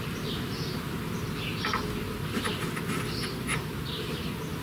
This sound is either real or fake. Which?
real